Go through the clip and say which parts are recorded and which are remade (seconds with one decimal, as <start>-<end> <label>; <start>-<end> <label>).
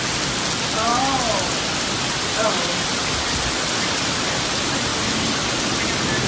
0.0-6.3 recorded